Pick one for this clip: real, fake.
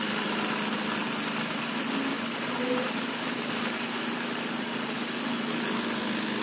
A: real